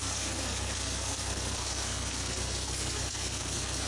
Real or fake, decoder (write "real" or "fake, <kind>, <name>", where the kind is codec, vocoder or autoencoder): fake, codec, SNAC